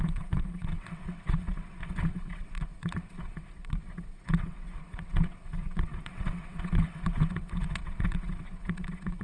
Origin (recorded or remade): remade